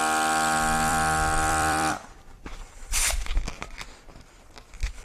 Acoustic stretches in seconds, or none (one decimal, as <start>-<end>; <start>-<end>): 0.0-0.9; 3.3-5.0